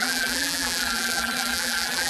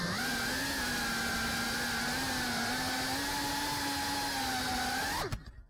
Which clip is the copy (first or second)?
first